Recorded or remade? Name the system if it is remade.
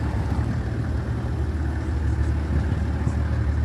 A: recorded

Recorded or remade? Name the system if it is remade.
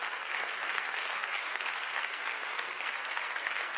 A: remade, codec, SNAC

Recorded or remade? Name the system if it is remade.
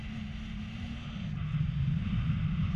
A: recorded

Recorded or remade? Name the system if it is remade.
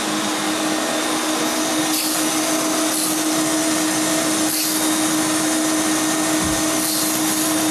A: recorded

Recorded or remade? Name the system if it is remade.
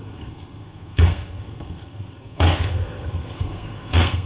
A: remade, codec, SNAC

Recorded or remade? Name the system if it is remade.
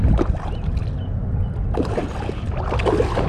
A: recorded